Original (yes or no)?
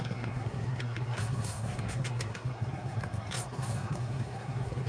no